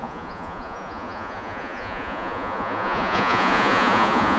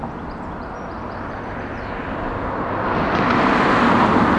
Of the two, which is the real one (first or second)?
second